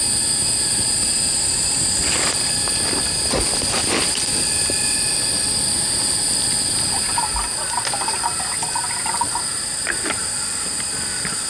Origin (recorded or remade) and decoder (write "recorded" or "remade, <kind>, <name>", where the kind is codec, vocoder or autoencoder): recorded